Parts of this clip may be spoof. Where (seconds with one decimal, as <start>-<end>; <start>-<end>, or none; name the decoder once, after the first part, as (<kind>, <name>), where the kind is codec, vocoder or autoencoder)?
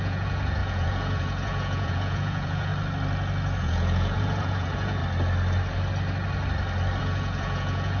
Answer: 0.0-2.7 (vocoder, Vocos); 3.6-5.0; 7.0-8.0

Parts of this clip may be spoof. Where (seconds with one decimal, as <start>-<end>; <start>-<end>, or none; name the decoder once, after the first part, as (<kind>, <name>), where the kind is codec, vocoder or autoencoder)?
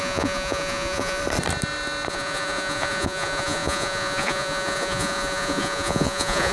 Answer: 0.0-1.2 (vocoder, Vocos); 2.1-6.5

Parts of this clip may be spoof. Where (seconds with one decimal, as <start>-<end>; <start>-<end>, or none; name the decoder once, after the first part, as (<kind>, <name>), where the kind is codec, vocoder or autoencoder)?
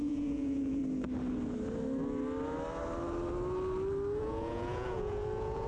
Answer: 0.0-0.8 (vocoder, Vocos); 4.2-5.7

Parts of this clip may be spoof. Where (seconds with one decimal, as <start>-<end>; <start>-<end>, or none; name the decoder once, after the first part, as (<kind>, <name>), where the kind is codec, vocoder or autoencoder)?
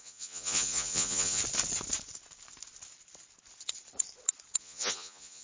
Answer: 0.0-1.4 (vocoder, Vocos); 4.6-5.4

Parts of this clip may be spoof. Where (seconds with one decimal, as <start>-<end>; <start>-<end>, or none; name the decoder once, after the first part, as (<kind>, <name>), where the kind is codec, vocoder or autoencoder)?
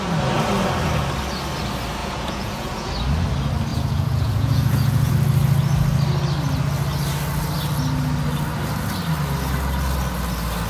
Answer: 2.0-2.9 (vocoder, Vocos); 3.7-5.1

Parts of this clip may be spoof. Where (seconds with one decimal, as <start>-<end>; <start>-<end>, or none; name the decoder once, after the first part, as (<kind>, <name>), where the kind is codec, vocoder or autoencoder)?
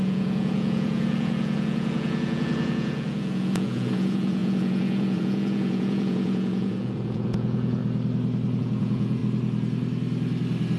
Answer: 0.0-7.8 (vocoder, Vocos); 8.6-9.2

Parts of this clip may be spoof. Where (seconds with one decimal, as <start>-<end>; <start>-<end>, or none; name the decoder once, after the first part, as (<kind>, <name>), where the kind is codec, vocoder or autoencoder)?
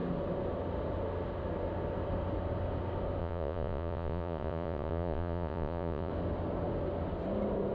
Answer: 3.2-6.1 (vocoder, Vocos)